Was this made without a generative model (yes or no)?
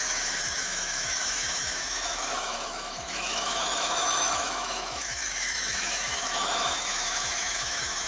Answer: no